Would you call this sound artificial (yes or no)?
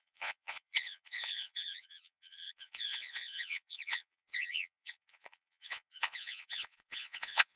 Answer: yes